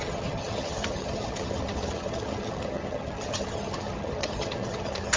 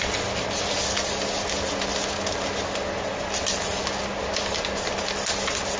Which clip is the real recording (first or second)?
second